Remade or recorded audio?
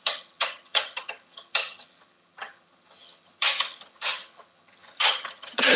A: remade